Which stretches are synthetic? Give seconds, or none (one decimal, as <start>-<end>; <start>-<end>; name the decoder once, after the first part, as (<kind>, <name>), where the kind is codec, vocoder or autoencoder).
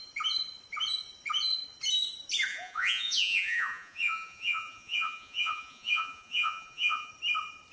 2.5-7.1 (vocoder, Vocos)